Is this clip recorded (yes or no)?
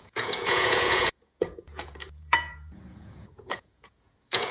no